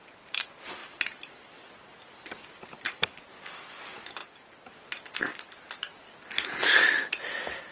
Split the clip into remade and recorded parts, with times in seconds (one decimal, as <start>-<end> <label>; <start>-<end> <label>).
0.0-0.8 recorded; 0.8-3.7 remade; 3.7-5.3 recorded; 5.3-5.8 remade; 5.8-7.7 recorded